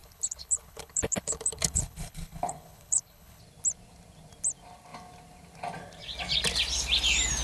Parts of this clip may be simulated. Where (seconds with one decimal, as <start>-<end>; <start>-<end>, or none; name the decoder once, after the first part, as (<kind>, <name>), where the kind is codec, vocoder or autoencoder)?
0.0-3.4 (codec, HILCodec)